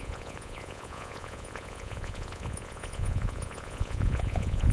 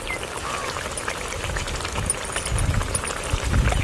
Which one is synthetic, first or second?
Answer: first